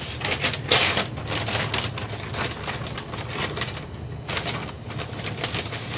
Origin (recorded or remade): recorded